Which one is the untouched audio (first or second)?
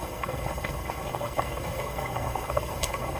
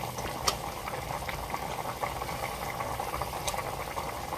second